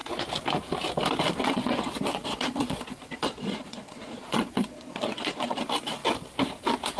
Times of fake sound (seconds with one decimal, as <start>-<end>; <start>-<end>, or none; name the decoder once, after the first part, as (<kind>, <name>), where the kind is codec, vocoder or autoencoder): 1.4-5.6 (vocoder, Vocos)